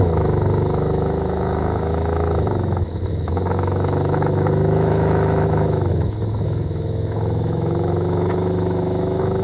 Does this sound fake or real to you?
fake